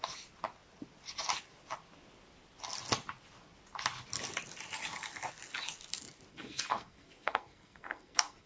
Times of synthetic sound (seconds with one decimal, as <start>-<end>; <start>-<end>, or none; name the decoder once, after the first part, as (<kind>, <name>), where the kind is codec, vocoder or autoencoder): 6.3-8.5 (codec, SNAC)